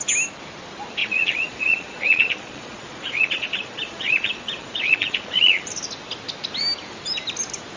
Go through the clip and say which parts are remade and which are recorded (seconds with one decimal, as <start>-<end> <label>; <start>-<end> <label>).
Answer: 0.0-1.0 recorded; 1.0-5.7 remade; 5.7-7.8 recorded